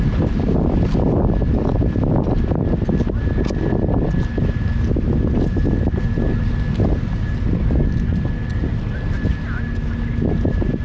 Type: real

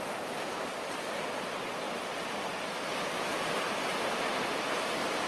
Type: real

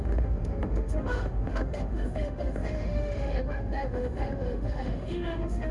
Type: fake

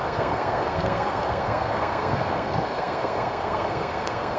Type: fake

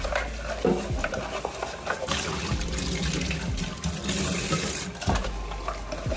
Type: real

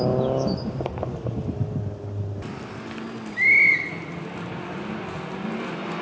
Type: real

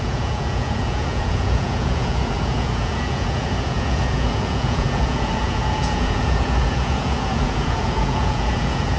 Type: fake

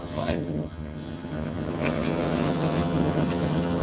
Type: fake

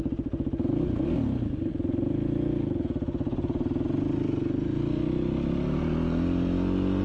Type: real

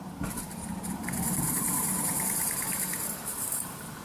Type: fake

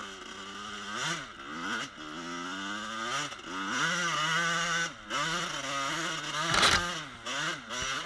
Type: real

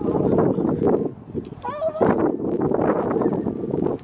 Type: real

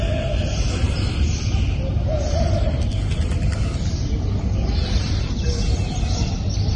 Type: real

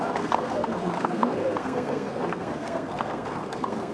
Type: fake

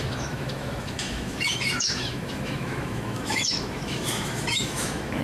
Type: fake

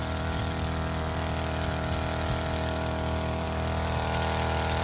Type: real